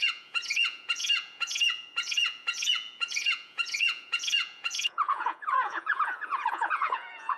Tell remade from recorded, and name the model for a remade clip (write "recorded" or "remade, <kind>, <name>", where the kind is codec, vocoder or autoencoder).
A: remade, vocoder, Vocos